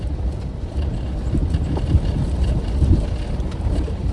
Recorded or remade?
recorded